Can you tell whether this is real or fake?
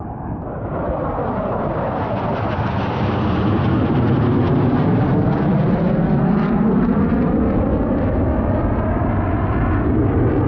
real